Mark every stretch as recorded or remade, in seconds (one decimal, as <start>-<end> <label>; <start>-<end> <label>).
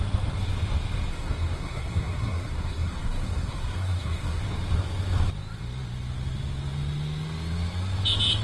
0.0-1.1 recorded; 1.1-4.4 remade; 4.4-8.4 recorded